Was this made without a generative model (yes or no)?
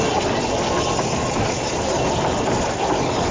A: yes